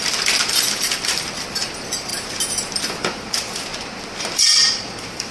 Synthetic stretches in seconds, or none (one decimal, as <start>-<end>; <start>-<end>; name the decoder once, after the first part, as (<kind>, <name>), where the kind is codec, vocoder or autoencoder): 0.0-2.1 (vocoder, BigVGAN v2); 2.8-3.7; 4.2-5.3